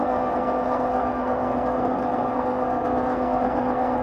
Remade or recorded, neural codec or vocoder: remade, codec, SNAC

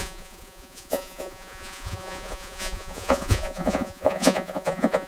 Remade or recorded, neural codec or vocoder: remade, vocoder, Vocos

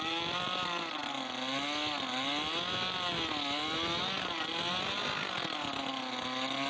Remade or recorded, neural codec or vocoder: recorded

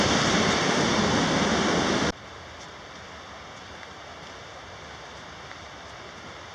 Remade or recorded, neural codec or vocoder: recorded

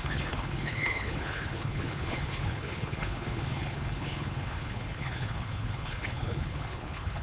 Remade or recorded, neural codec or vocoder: remade, codec, HILCodec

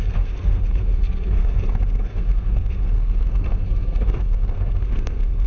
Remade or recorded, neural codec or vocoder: remade, codec, SNAC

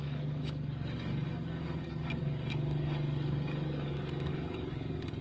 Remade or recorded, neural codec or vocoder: remade, codec, DAC